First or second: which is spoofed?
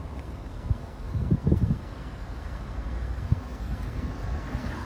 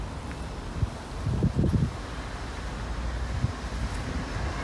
first